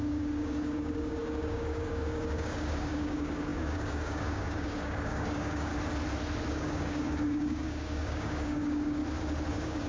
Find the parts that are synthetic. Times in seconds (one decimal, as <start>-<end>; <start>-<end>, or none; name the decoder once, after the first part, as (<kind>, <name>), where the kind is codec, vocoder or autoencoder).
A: 0.0-5.7 (codec, DAC); 6.5-9.0; 9.5-9.9